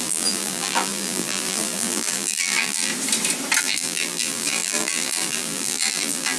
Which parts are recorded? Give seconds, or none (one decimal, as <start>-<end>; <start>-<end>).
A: 2.9-3.6